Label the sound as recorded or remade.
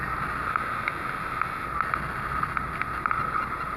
recorded